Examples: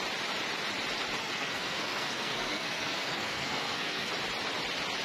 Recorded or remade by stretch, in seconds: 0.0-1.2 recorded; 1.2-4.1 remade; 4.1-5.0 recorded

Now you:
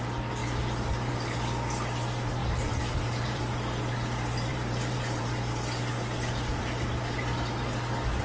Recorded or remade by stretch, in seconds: 0.0-2.4 recorded; 2.4-3.4 remade; 3.4-4.5 recorded; 4.5-5.2 remade; 5.2-8.2 recorded